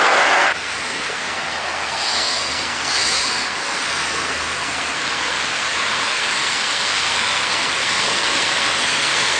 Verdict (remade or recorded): remade